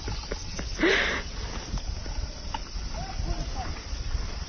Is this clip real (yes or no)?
yes